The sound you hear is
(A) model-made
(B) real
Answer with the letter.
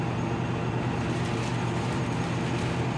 A